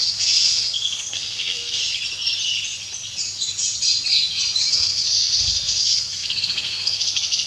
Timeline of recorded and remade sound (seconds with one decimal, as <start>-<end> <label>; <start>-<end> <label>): 0.0-1.8 remade; 1.8-4.7 recorded; 4.7-7.5 remade

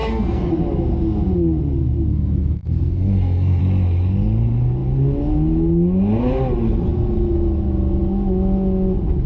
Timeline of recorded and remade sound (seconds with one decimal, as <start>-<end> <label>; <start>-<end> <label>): 0.0-0.5 remade; 0.5-2.1 recorded; 2.1-3.6 remade; 3.6-9.3 recorded